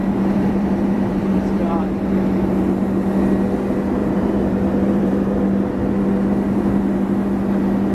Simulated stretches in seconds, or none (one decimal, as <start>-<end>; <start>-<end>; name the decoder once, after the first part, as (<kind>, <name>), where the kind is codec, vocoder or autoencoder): 0.0-2.0 (vocoder, BigVGAN v2); 4.0-5.4